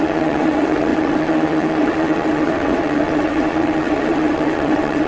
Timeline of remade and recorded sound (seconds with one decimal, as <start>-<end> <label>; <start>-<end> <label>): 0.0-5.1 remade